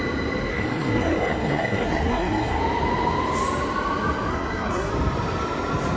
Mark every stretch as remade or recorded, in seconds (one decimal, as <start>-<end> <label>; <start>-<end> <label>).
0.0-0.5 recorded; 0.5-2.6 remade; 2.6-4.3 recorded; 4.3-4.9 remade; 4.9-6.0 recorded